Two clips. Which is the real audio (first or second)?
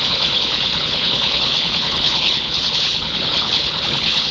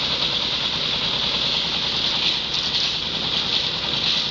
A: second